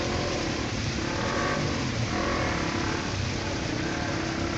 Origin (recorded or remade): recorded